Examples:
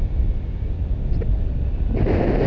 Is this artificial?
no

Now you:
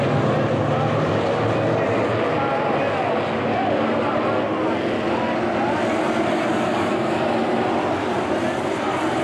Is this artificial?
no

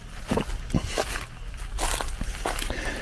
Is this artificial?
no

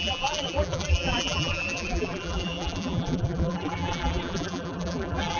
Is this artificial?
yes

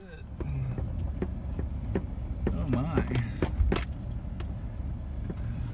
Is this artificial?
no